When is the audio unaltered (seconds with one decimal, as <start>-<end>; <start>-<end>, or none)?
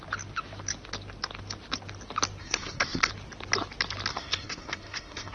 0.0-2.4; 3.1-4.1